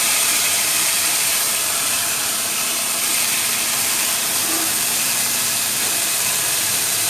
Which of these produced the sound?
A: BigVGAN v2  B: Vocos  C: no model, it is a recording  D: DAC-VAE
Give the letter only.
A